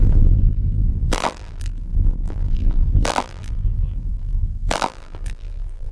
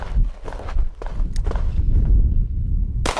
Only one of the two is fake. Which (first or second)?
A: first